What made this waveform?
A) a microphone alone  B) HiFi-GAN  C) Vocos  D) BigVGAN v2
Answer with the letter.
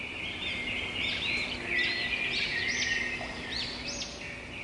A